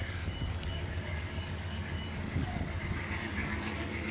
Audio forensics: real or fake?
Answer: fake